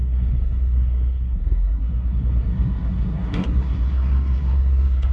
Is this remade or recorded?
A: remade